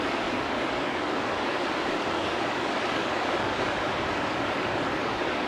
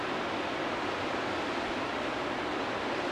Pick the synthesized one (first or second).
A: first